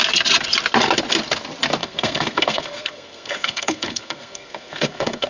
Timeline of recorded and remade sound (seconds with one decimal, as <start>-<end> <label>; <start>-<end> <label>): 0.0-1.8 recorded; 1.8-5.3 remade

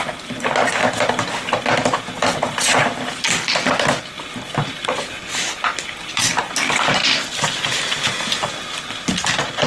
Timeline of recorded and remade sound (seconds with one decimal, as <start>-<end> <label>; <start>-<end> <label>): 0.0-9.7 recorded

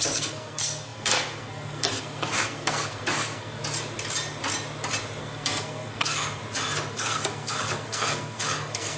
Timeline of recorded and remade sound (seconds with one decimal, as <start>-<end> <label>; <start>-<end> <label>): 0.0-3.6 remade; 3.6-5.2 recorded; 5.2-6.4 remade; 6.4-6.9 recorded; 6.9-9.0 remade

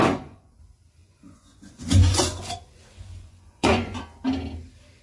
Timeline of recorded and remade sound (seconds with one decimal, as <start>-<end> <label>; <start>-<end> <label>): 0.0-0.6 remade; 0.6-1.0 recorded; 1.0-4.0 remade; 4.0-5.0 recorded

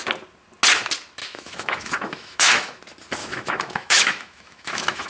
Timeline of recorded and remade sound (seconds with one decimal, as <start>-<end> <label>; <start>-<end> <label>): 0.0-1.2 recorded; 1.2-2.8 remade; 2.8-3.2 recorded; 3.2-5.1 remade

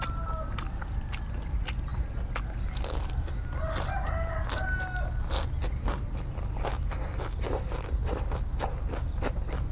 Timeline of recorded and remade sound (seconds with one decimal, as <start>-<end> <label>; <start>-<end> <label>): 0.0-9.7 recorded